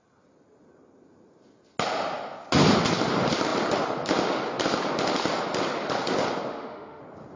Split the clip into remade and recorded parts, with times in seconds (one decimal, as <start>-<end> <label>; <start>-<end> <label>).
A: 0.0-6.5 recorded; 6.5-7.0 remade; 7.0-7.4 recorded